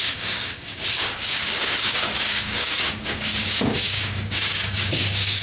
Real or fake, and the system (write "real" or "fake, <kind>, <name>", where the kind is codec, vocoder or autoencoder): fake, codec, DAC